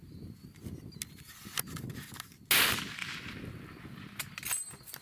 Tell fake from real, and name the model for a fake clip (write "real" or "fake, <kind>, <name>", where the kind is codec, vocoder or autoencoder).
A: real